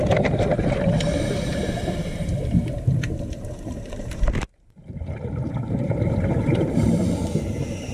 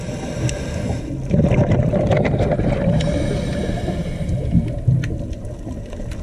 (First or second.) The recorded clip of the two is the second